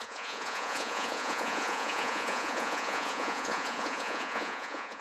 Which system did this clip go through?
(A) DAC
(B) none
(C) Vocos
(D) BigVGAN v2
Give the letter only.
C